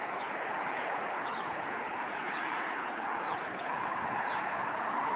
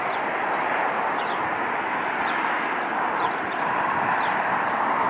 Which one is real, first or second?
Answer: second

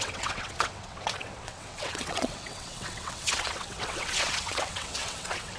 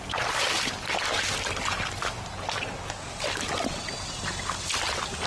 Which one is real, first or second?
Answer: second